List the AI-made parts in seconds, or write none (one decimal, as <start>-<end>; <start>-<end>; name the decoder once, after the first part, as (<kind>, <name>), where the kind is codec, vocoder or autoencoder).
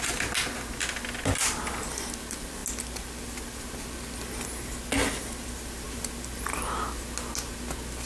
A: none